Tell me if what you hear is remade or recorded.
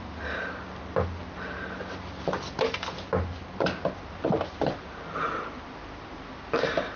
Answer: recorded